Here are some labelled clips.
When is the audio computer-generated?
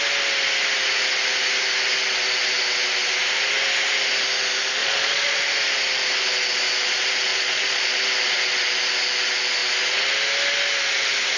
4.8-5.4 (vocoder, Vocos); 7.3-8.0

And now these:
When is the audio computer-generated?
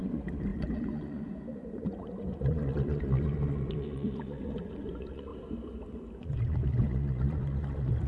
0.0-5.3 (vocoder, Vocos); 6.2-8.1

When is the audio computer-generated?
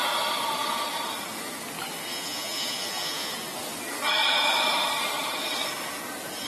2.1-3.3 (vocoder, Vocos)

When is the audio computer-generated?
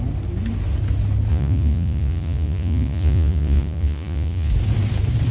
1.3-4.5 (vocoder, Vocos)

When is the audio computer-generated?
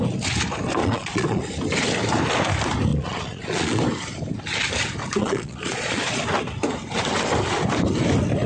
0.8-1.4 (vocoder, Vocos); 2.9-3.8; 5.2-6.2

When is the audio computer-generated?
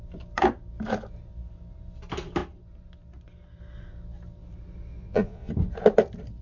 4.9-5.5 (vocoder, Vocos)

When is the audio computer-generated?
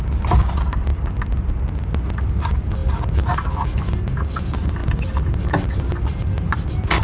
none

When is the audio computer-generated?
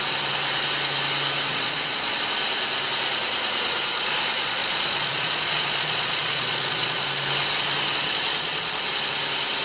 1.5-2.2 (vocoder, Vocos); 4.6-7.0; 8.0-8.9